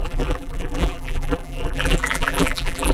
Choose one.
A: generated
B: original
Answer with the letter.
A